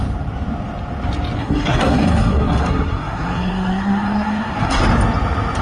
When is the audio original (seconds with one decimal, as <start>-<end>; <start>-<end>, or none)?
0.0-1.4; 4.8-5.6